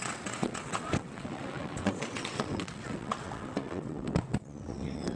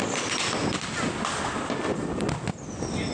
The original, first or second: second